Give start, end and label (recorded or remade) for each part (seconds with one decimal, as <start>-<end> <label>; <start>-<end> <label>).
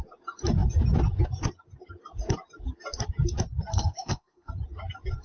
0.0-3.7 recorded; 3.7-4.5 remade; 4.5-5.2 recorded